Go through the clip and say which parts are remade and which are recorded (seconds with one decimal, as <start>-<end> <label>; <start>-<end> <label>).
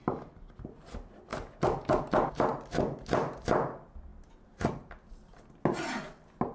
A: 0.0-6.5 recorded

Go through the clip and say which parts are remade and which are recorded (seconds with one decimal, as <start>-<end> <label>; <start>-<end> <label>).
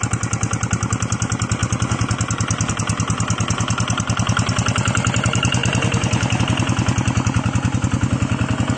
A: 0.0-8.8 recorded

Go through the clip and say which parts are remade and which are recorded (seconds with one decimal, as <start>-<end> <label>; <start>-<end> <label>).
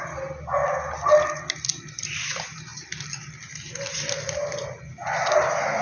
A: 0.0-5.8 recorded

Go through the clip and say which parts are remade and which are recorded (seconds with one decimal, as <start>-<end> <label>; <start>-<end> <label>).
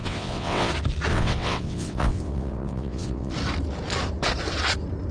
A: 0.0-0.7 remade; 0.7-1.1 recorded; 1.1-3.3 remade; 3.3-5.1 recorded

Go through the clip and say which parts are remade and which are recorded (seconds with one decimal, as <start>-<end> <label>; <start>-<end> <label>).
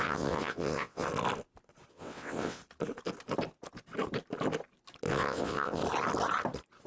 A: 0.0-1.1 remade; 1.1-1.9 recorded; 1.9-2.6 remade; 2.6-5.1 recorded; 5.1-5.8 remade; 5.8-6.9 recorded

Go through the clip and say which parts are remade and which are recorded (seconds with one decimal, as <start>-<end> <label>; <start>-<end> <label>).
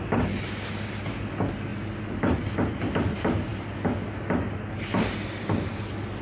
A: 0.0-6.2 recorded